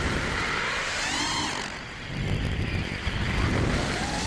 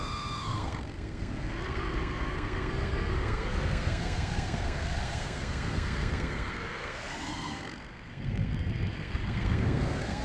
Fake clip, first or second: second